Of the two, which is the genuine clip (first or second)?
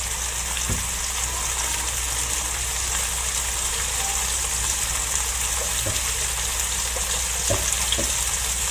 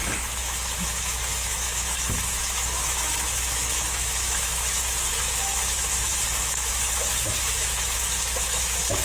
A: first